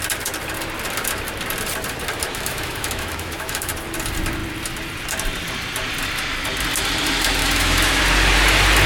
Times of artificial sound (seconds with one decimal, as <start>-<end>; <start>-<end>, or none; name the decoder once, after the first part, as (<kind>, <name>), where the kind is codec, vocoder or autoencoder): 2.3-3.7 (autoencoder, DAC-VAE); 7.4-8.0